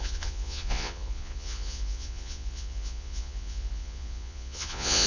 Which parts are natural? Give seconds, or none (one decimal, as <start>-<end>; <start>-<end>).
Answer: none

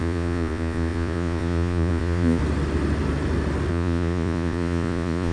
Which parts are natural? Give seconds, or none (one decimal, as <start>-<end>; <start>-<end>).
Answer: 2.4-3.7